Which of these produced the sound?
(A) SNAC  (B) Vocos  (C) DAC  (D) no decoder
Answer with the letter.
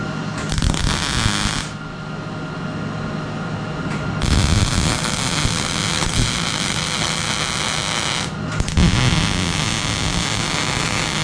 D